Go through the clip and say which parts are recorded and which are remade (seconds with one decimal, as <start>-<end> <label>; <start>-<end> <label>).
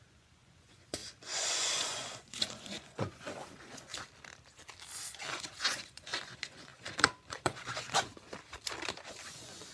0.0-3.9 remade; 3.9-5.3 recorded; 5.3-8.1 remade; 8.1-9.1 recorded; 9.1-9.7 remade